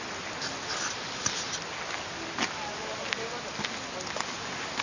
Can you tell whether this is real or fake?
real